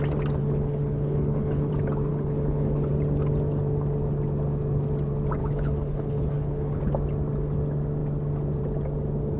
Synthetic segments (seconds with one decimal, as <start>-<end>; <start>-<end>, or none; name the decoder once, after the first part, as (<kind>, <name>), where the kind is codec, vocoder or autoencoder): 0.4-1.7 (codec, HILCodec); 2.1-2.9; 5.4-6.8